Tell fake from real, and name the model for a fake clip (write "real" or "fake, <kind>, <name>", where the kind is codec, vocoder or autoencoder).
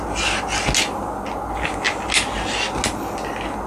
real